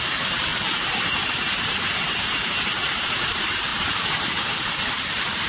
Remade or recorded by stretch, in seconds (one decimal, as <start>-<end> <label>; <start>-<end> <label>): 0.0-5.5 remade